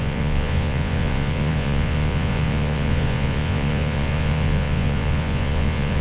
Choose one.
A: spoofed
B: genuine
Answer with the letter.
A